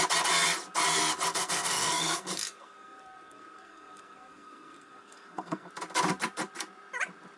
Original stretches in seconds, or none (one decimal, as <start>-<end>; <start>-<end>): 0.0-1.3; 5.7-7.4